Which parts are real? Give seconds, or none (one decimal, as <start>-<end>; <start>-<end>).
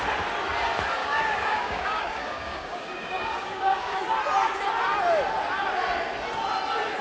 0.0-1.0; 4.0-7.0